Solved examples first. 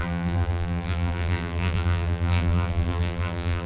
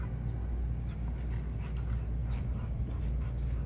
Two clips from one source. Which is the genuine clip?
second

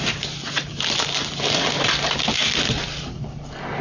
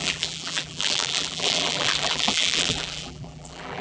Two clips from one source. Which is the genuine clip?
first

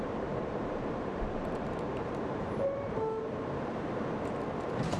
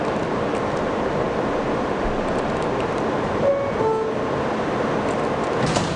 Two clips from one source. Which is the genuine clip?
second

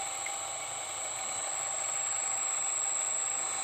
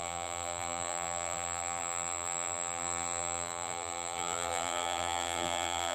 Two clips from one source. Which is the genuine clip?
first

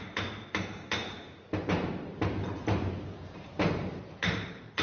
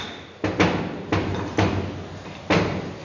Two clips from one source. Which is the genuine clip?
second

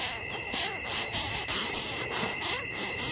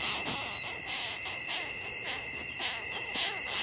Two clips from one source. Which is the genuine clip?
second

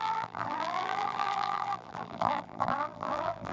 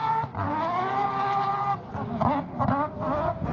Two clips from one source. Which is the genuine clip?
second